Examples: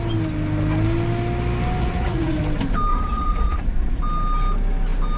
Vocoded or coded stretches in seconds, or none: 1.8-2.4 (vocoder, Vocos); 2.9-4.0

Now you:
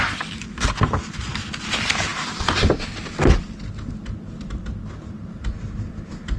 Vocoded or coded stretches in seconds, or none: none

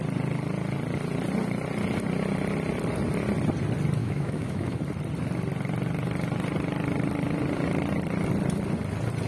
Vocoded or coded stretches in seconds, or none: 4.0-4.8 (autoencoder, DAC-VAE)

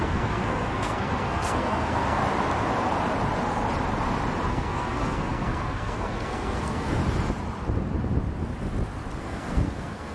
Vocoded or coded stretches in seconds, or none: 0.0-2.2 (codec, SNAC); 4.5-7.0; 9.2-10.1

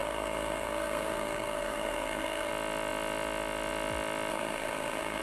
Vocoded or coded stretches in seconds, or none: 0.0-2.5 (codec, SNAC); 4.3-5.2

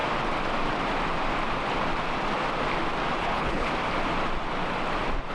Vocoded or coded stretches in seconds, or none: 3.2-3.7 (codec, HILCodec)

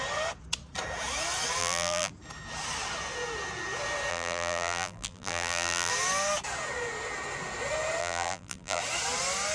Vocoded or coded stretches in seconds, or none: 1.6-2.1 (vocoder, BigVGAN v2); 4.1-5.9; 8.0-8.8

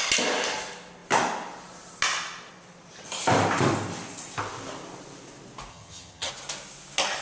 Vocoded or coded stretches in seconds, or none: 5.7-6.3 (vocoder, HiFi-GAN)